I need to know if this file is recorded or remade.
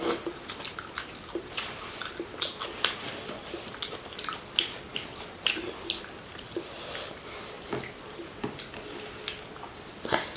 recorded